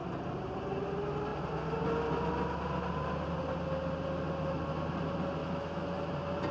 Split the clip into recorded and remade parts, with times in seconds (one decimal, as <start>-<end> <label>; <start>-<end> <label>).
0.0-5.4 recorded; 5.4-6.1 remade; 6.1-6.5 recorded